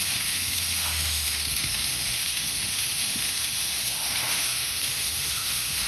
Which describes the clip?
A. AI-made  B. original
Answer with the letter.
A